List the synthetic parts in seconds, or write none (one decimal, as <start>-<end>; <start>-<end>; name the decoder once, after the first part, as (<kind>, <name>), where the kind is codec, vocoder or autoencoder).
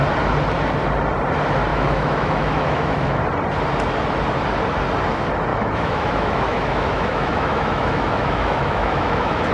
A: 1.7-3.2 (autoencoder, DAC-VAE); 5.5-9.5